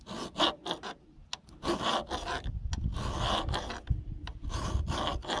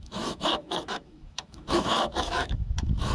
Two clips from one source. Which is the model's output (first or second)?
second